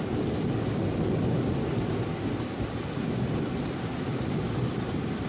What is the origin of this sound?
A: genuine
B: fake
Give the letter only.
A